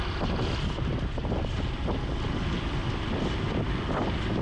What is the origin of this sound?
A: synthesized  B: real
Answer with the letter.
B